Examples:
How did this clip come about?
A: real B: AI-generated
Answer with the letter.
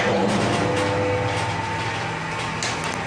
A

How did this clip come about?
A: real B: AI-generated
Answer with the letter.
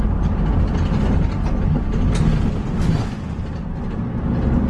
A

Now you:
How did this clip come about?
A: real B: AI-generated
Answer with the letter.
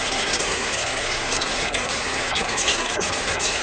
B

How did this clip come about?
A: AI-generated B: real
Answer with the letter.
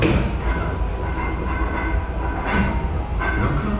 B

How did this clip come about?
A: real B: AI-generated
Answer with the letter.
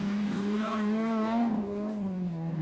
B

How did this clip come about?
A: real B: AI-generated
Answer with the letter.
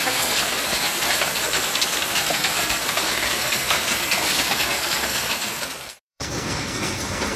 B